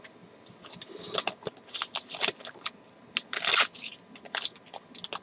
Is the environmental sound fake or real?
real